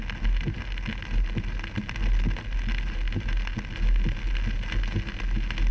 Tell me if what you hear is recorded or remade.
recorded